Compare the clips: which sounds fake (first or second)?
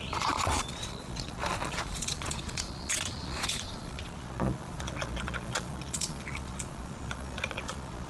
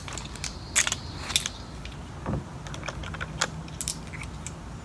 first